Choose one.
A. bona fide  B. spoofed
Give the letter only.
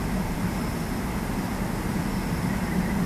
A